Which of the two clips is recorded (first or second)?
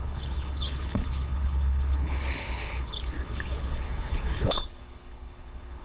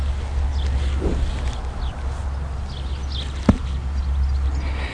second